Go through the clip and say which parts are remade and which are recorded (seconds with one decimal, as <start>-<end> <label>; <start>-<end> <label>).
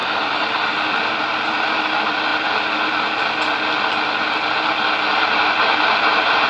0.0-2.3 remade; 2.3-5.6 recorded; 5.6-6.5 remade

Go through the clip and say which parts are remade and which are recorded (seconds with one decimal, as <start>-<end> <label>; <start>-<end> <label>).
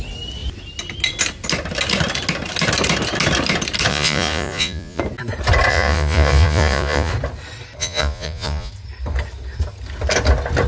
0.0-3.9 recorded; 3.9-5.0 remade; 5.0-5.7 recorded; 5.7-7.1 remade; 7.1-7.8 recorded; 7.8-8.7 remade; 8.7-10.7 recorded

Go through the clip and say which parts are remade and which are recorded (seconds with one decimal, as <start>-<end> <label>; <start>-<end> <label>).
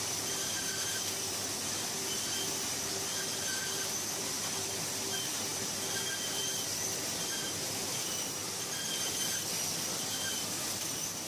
0.0-11.3 recorded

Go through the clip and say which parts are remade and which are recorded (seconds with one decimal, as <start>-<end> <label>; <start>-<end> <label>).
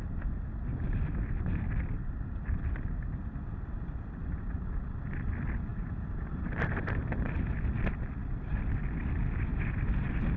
0.0-5.7 recorded; 5.7-7.0 remade; 7.0-9.5 recorded; 9.5-10.4 remade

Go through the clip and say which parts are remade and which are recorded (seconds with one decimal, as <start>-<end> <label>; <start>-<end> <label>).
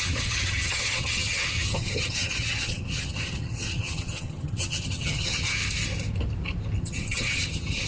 0.0-5.6 remade; 5.6-6.8 recorded; 6.8-7.9 remade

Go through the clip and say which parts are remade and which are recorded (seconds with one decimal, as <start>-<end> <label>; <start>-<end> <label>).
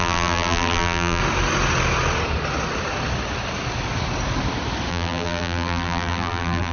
0.0-1.2 remade; 1.2-4.9 recorded; 4.9-6.7 remade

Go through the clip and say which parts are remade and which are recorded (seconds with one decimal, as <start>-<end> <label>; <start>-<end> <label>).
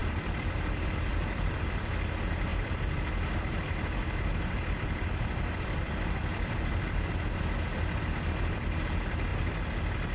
0.0-1.9 remade; 1.9-2.5 recorded; 2.5-7.1 remade; 7.1-10.1 recorded